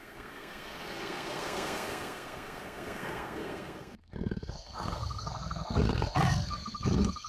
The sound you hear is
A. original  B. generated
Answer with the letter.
B